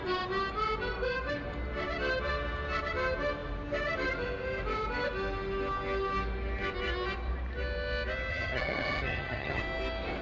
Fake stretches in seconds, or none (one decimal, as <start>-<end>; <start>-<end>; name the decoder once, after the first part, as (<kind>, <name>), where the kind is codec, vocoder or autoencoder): 8.3-9.6 (vocoder, HiFi-GAN)